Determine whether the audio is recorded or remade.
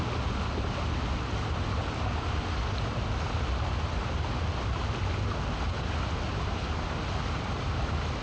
recorded